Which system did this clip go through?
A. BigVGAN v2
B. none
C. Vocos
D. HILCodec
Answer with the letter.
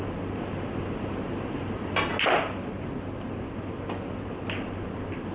B